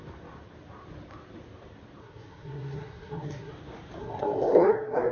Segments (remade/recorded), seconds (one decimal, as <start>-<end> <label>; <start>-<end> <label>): 0.0-2.0 recorded; 2.0-3.5 remade; 3.5-4.0 recorded; 4.0-5.1 remade